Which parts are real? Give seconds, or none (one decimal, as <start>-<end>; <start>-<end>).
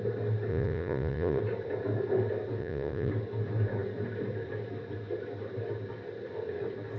0.0-0.5; 1.4-2.6; 3.1-7.0